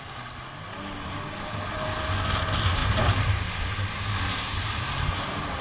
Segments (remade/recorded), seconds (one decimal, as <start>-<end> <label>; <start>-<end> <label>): 0.0-5.6 recorded